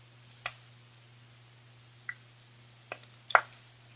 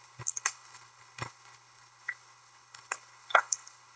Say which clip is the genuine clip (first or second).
first